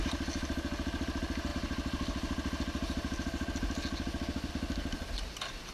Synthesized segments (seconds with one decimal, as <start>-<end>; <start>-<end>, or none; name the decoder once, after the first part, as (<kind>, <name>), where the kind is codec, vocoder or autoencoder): none